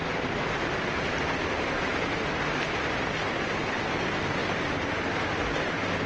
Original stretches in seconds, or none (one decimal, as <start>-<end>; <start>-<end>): 0.0-6.1